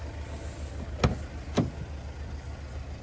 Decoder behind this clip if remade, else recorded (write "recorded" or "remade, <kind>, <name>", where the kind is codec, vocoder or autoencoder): recorded